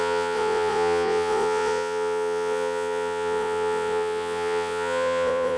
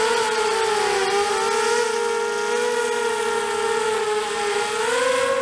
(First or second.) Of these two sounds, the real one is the second